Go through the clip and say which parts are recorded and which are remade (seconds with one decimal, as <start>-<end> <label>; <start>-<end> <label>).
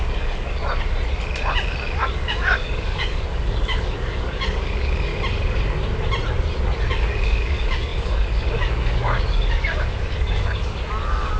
0.0-0.6 remade; 0.6-2.0 recorded; 2.0-5.1 remade; 5.1-6.9 recorded; 6.9-11.4 remade